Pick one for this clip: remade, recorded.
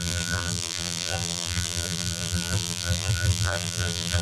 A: remade